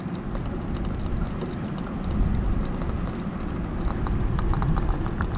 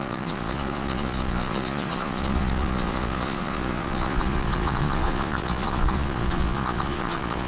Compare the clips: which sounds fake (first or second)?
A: second